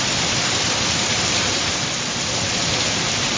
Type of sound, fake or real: fake